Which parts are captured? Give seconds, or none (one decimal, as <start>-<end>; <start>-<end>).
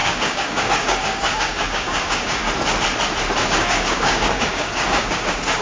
2.4-3.4